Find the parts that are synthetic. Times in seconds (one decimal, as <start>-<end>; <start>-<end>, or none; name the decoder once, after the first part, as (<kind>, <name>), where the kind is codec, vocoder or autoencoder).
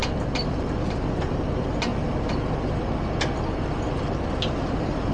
0.6-1.9 (vocoder, BigVGAN v2); 4.6-5.1